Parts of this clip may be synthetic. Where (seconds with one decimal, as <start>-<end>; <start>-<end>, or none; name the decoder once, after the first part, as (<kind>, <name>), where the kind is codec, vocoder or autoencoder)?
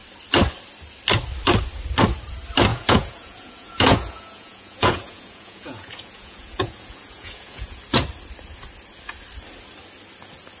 2.7-7.8 (vocoder, Vocos)